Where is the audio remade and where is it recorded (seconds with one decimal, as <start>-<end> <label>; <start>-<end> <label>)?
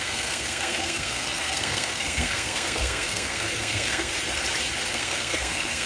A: 0.0-4.1 remade; 4.1-4.9 recorded; 4.9-5.9 remade